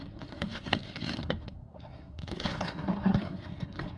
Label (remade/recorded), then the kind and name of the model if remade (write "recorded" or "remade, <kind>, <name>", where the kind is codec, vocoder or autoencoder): remade, codec, SNAC